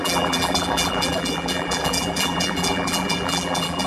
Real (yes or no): no